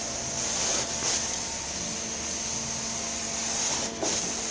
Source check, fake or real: real